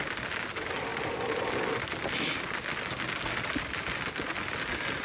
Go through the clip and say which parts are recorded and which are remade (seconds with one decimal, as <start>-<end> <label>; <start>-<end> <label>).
0.0-5.0 recorded